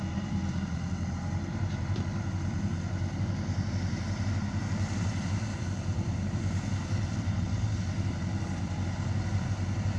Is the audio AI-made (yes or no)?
yes